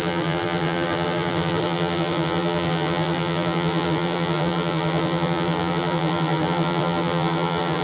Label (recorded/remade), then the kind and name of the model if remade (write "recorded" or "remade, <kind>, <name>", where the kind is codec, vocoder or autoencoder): remade, vocoder, BigVGAN v2